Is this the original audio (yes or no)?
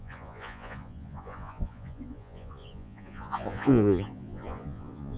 no